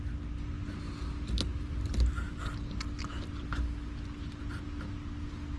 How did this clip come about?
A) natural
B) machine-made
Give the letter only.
A